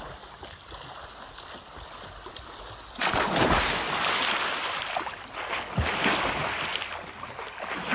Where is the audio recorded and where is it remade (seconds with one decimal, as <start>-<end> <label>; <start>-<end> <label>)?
0.0-7.9 recorded